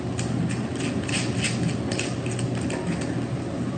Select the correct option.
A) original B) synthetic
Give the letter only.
A